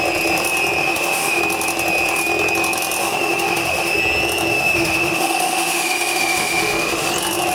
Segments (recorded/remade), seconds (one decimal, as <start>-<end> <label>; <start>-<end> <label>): 0.0-0.8 recorded; 0.8-1.4 remade; 1.4-3.0 recorded; 3.0-4.0 remade; 4.0-4.5 recorded; 4.5-7.1 remade; 7.1-7.5 recorded